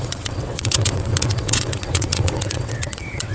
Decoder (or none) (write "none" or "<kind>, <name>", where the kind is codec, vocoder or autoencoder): vocoder, WaveNeXt